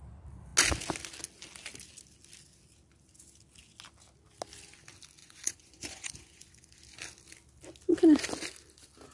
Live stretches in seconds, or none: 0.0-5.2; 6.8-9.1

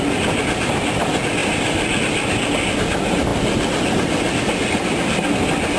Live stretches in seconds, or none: 0.0-5.8

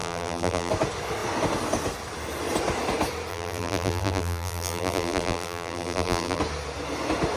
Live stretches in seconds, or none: 0.7-3.3; 6.4-7.4

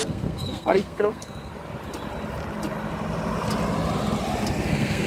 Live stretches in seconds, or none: 1.5-4.6

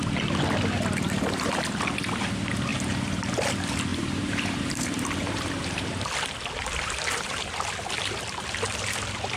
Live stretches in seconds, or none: 0.0-2.7; 3.3-3.9; 5.9-9.4

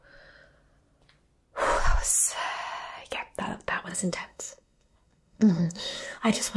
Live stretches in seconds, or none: 0.0-3.9

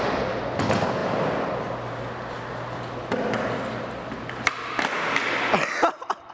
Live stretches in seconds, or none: 0.0-1.0; 4.8-6.3